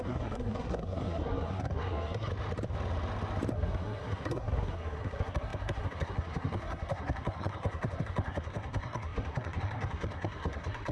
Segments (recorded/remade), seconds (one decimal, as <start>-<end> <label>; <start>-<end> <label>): 0.0-2.3 remade; 2.3-3.5 recorded; 3.5-10.9 remade